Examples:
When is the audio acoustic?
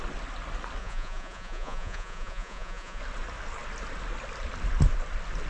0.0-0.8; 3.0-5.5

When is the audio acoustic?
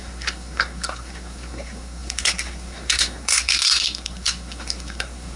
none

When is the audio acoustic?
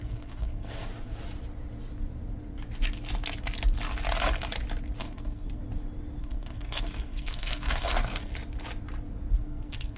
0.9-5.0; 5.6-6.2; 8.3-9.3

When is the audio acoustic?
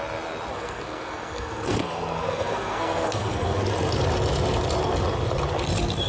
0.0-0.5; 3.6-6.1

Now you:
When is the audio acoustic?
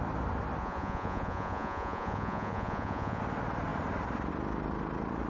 0.0-0.6; 3.2-5.3